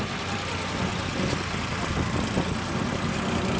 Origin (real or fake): real